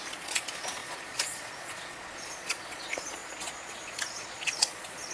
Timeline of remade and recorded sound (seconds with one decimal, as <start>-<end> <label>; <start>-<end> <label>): 0.0-5.1 remade